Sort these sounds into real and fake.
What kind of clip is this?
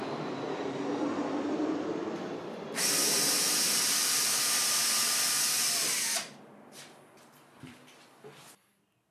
fake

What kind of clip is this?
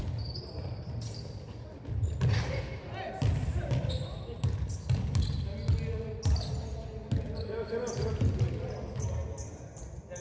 real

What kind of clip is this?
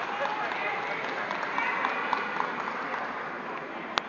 real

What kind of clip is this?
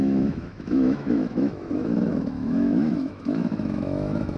fake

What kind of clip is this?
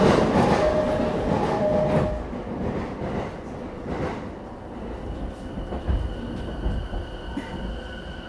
real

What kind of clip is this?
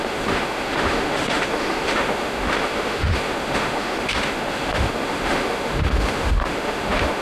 fake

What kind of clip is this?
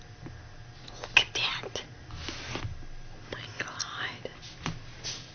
real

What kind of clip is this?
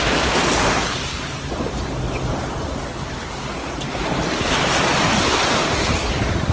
real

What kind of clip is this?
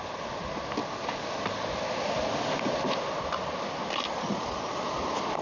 real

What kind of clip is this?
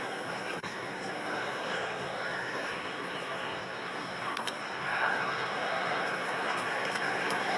fake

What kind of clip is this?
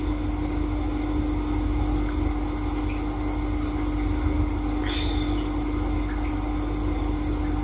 real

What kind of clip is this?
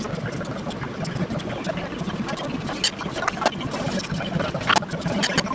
real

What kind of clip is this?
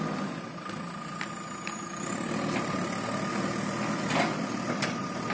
real